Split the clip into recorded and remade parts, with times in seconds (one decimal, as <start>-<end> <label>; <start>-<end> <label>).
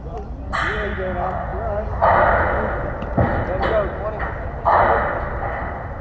0.0-6.0 recorded